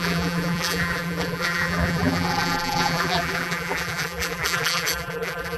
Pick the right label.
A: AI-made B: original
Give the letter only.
A